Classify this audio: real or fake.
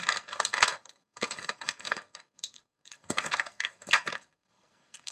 fake